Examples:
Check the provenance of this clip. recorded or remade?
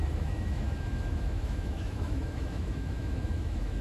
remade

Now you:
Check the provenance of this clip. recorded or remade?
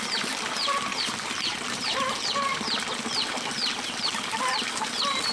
recorded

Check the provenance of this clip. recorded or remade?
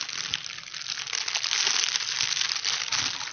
recorded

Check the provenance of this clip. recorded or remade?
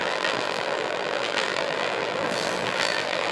remade